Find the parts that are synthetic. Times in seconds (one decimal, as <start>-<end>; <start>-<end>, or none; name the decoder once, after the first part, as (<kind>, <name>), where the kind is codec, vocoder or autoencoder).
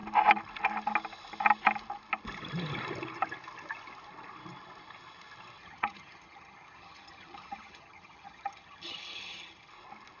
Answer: 5.6-9.7 (vocoder, HiFi-GAN)